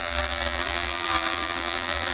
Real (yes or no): no